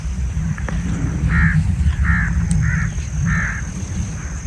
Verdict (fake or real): real